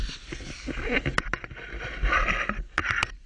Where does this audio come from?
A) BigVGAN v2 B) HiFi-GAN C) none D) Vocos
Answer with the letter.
C